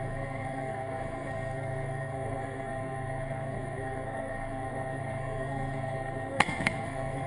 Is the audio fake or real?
fake